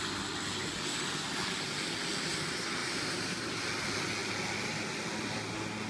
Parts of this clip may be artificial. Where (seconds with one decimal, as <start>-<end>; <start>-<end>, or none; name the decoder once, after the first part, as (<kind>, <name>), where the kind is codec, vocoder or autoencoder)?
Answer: 2.8-3.6 (vocoder, BigVGAN v2)